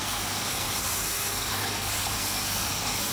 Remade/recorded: remade